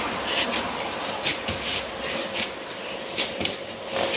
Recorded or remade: recorded